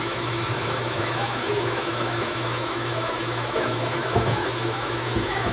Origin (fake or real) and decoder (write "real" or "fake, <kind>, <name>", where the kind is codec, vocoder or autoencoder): fake, autoencoder, DAC-VAE